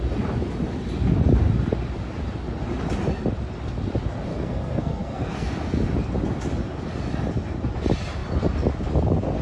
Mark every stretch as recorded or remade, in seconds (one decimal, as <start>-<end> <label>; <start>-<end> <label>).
0.0-4.3 recorded; 4.3-5.5 remade; 5.5-9.4 recorded